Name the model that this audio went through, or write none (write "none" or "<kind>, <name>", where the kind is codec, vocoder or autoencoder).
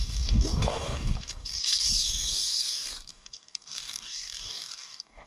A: codec, DAC